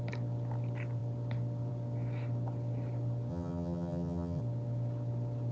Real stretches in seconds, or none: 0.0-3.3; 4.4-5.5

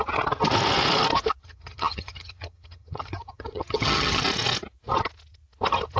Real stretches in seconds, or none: 0.0-1.4; 4.2-6.0